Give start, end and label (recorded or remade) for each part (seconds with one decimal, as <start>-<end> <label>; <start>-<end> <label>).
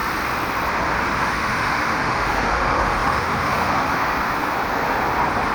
0.0-1.2 recorded; 1.2-4.6 remade; 4.6-5.5 recorded